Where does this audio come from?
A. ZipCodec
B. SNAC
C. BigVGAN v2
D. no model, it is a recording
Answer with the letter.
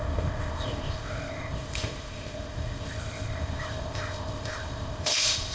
A